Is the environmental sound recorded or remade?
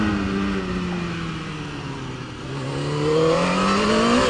recorded